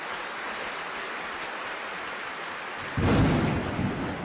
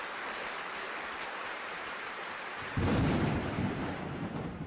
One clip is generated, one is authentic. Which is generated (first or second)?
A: second